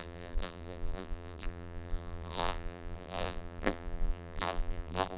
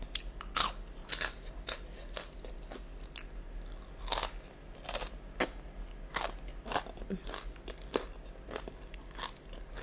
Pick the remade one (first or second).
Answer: first